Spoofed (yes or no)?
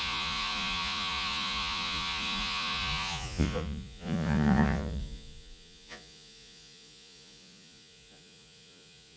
yes